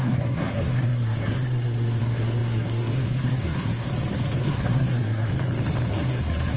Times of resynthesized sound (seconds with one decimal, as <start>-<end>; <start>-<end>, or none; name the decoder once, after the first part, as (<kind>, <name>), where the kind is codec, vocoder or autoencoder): 0.0-3.9 (codec, SNAC); 4.4-5.3; 5.9-6.6